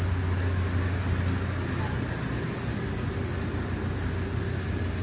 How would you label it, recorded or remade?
recorded